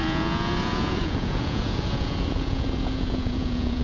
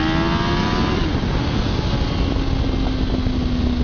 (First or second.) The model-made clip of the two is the first